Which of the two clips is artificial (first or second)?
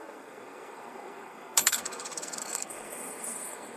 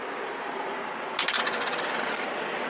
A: first